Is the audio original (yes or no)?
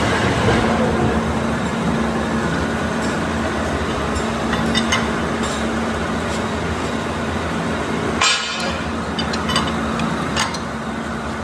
yes